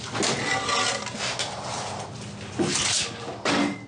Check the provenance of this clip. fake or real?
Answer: real